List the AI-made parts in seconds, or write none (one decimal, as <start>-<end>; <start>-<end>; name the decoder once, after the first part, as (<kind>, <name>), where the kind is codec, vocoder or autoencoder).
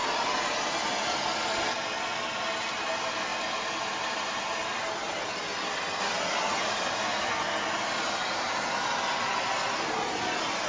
0.0-0.6 (vocoder, BigVGAN v2); 3.3-5.1; 6.5-7.4